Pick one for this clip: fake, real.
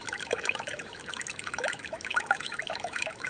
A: fake